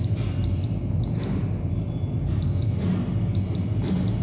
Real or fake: real